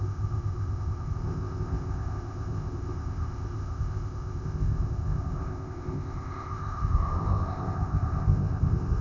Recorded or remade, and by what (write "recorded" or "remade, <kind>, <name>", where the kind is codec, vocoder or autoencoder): remade, codec, ZipCodec